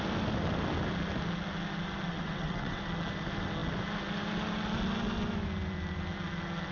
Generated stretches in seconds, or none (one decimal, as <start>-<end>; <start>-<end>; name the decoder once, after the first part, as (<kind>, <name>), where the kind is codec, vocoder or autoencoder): 2.1-2.8 (vocoder, WaveNeXt)